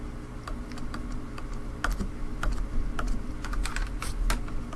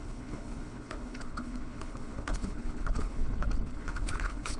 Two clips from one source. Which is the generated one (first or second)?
second